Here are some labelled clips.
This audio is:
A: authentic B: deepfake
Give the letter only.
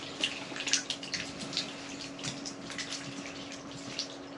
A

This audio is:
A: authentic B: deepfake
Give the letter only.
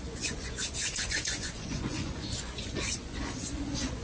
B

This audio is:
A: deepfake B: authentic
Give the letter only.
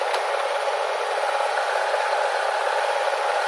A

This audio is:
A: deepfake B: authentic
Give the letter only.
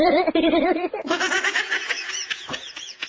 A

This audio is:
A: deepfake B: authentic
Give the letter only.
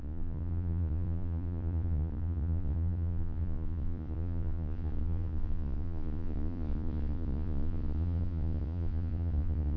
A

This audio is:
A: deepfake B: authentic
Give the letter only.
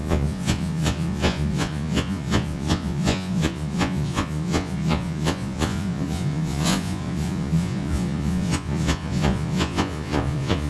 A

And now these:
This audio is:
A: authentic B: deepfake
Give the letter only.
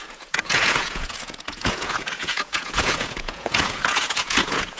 B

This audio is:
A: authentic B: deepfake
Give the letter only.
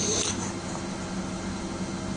A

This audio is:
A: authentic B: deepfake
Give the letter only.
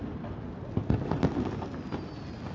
A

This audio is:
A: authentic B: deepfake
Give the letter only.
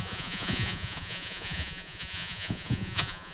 B